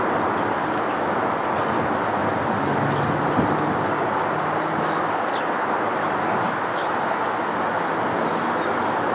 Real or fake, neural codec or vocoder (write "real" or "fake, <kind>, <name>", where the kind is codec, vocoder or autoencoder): real